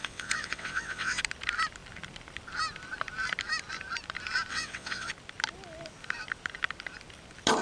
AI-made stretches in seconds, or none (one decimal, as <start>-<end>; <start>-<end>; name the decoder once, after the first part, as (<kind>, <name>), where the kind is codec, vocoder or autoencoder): 0.0-1.2 (vocoder, WaveNeXt); 4.5-5.1